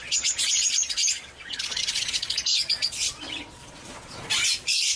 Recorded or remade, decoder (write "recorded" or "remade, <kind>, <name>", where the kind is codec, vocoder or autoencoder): remade, vocoder, Vocos